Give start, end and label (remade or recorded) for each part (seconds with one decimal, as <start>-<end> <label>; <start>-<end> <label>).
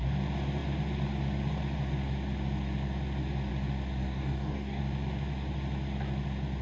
0.0-4.0 recorded; 4.0-4.8 remade; 4.8-6.6 recorded